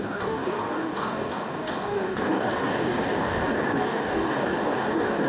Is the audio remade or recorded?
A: remade